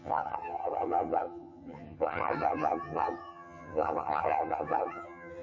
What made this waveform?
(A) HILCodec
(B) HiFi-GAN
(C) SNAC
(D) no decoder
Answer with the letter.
B